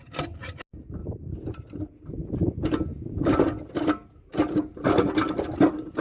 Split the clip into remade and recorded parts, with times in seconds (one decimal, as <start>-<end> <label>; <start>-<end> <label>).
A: 0.0-6.0 recorded